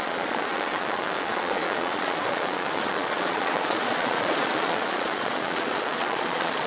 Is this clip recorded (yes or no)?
no